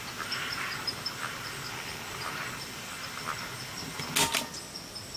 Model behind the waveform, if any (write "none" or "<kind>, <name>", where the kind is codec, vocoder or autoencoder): none